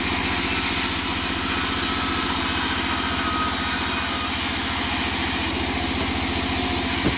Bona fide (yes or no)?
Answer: yes